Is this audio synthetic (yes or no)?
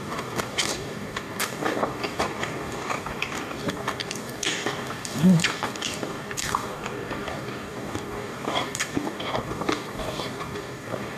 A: yes